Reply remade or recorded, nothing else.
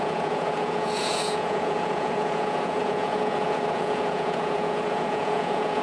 remade